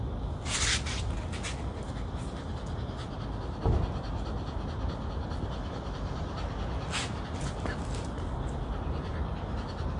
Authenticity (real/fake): real